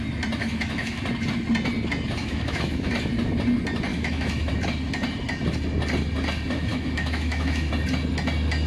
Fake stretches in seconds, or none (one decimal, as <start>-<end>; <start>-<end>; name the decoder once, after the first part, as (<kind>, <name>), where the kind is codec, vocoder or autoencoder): 0.4-1.0 (autoencoder, DAC-VAE); 2.2-2.9; 3.9-4.5; 6.7-7.7